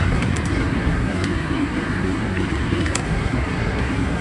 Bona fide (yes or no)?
no